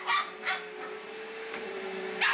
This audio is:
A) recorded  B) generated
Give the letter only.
A